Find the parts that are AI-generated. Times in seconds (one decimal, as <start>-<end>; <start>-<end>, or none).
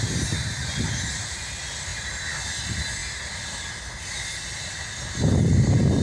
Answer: none